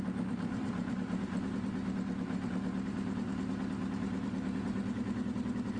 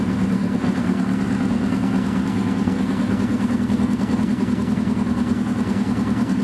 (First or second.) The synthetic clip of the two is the second